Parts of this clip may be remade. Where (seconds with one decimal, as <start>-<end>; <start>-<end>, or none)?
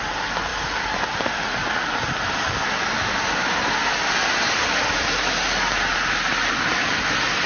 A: none